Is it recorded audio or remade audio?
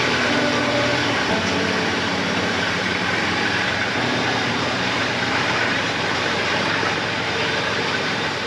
remade